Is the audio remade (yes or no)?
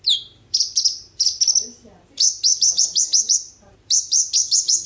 yes